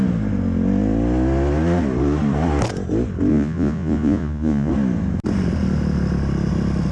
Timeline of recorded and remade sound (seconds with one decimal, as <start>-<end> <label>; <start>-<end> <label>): 0.0-3.3 recorded; 3.3-4.7 remade; 4.7-6.9 recorded